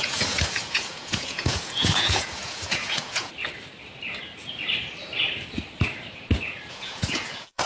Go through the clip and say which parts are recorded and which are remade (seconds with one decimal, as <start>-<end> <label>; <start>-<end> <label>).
0.0-3.3 remade; 3.3-6.7 recorded; 6.7-7.7 remade

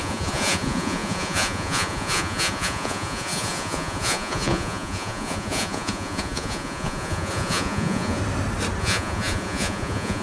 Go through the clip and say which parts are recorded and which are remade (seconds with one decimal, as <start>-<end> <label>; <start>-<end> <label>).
0.0-8.2 remade; 8.2-8.8 recorded; 8.8-10.2 remade

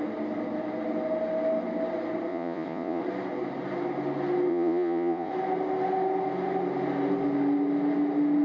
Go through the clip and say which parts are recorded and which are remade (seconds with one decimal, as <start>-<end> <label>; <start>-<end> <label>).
0.0-2.3 recorded; 2.3-3.0 remade; 3.0-4.5 recorded; 4.5-5.3 remade; 5.3-8.4 recorded

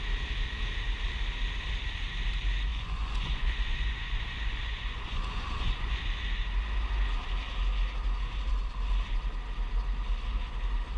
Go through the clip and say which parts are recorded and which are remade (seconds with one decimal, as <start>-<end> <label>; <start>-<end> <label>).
0.0-2.7 recorded; 2.7-6.0 remade; 6.0-11.0 recorded

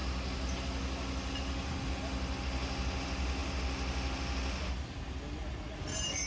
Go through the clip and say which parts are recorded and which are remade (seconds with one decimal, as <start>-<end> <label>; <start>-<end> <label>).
0.0-6.3 recorded